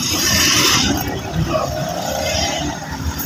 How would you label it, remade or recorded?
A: remade